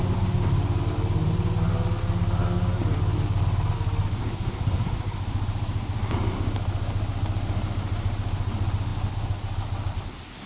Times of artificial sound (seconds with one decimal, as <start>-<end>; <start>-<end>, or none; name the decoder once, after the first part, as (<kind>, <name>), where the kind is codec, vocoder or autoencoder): 4.2-5.2 (codec, SNAC)